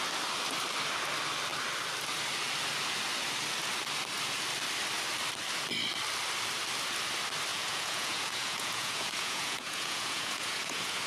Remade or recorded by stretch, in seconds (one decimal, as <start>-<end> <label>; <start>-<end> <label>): 0.0-7.5 recorded; 7.5-11.1 remade